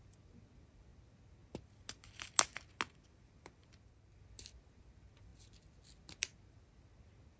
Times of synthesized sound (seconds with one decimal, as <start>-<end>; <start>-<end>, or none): none